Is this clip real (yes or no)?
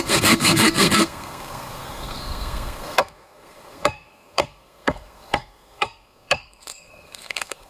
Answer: no